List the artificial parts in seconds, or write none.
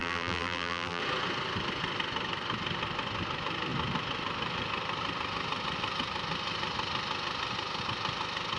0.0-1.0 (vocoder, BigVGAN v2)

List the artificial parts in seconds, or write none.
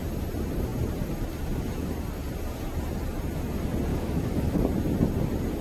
3.9-4.6 (autoencoder, DAC-VAE)